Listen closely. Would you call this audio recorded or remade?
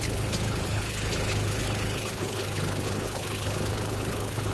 remade